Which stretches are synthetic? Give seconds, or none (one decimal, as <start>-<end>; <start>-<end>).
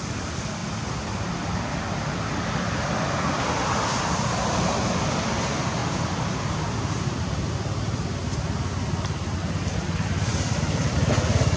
0.6-1.8; 5.8-7.2